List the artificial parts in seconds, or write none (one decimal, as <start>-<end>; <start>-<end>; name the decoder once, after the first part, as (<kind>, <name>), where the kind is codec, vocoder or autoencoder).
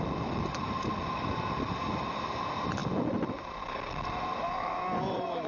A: none